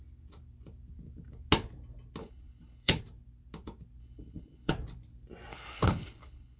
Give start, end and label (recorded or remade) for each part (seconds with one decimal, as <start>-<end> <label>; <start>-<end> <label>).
0.0-2.2 recorded; 2.2-3.0 remade; 3.0-4.0 recorded; 4.0-4.7 remade; 4.7-5.5 recorded; 5.5-6.6 remade